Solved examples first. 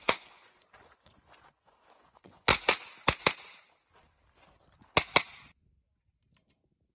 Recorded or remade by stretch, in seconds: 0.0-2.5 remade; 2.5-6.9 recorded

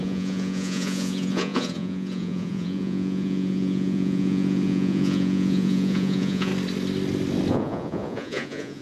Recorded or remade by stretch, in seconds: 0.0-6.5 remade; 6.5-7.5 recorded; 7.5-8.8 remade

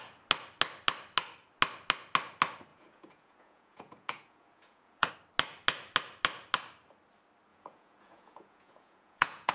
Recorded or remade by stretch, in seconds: 0.0-2.7 recorded; 2.7-5.1 remade; 5.1-7.5 recorded; 7.5-9.5 remade